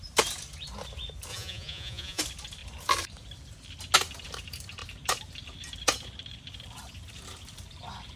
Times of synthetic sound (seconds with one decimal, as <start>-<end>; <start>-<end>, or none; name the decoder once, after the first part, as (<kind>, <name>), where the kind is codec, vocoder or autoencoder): 1.3-2.2 (vocoder, Vocos)